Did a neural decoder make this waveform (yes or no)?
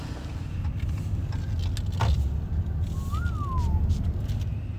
no